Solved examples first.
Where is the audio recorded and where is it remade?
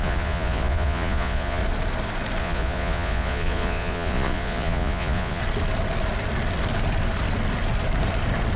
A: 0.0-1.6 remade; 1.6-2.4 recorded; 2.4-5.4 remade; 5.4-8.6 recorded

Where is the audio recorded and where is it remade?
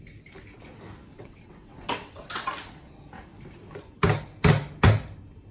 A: 0.0-1.1 recorded; 1.1-2.5 remade; 2.5-5.5 recorded